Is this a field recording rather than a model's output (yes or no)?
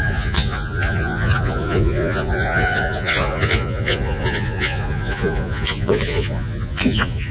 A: no